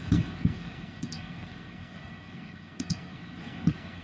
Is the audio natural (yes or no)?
no